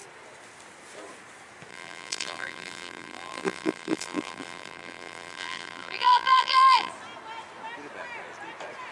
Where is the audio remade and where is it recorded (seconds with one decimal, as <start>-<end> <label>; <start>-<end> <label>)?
0.0-1.7 recorded; 1.7-6.9 remade; 6.9-8.9 recorded